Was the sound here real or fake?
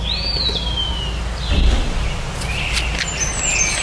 real